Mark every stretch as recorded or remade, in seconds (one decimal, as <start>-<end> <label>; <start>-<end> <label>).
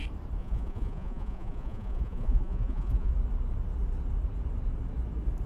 0.0-0.4 recorded; 0.4-3.1 remade; 3.1-5.5 recorded